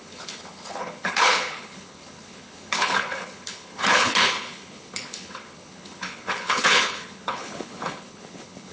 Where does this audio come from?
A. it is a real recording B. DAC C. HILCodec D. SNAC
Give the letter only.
C